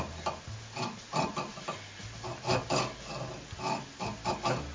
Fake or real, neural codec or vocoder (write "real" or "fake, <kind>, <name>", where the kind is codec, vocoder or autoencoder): real